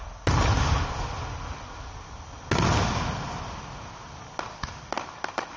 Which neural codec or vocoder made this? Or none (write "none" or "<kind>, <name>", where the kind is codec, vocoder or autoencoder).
none